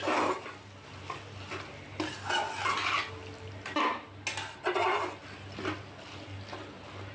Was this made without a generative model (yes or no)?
yes